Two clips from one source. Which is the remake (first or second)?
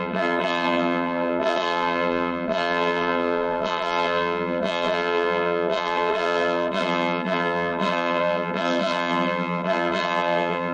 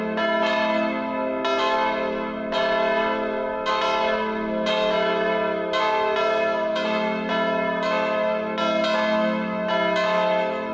first